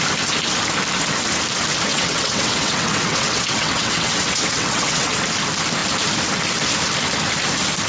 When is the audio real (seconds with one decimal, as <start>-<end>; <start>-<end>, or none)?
0.0-1.9; 5.2-7.9